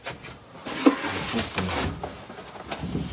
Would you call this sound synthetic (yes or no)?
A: no